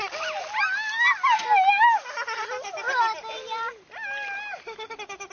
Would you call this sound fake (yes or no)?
no